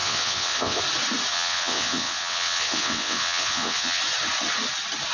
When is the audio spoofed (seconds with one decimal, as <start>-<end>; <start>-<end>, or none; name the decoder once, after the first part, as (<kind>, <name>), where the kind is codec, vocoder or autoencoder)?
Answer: 0.0-0.8 (vocoder, WaveNeXt); 1.3-4.0